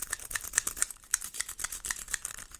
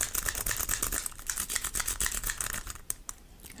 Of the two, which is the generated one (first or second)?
first